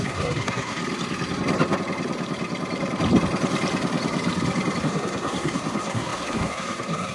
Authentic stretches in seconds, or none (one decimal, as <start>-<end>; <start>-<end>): 0.8-4.8